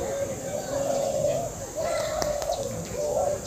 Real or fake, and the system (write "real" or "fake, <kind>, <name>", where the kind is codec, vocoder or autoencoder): fake, vocoder, BigVGAN v2